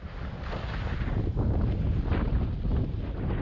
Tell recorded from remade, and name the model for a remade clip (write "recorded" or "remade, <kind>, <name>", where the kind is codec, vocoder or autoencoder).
recorded